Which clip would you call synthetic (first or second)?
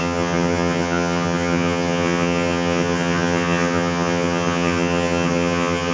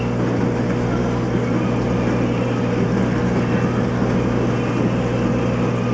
first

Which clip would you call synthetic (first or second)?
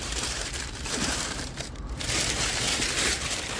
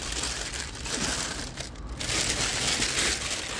first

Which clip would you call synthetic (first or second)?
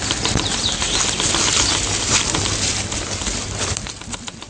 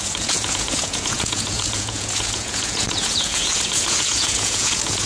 second